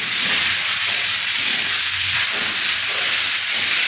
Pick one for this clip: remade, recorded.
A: remade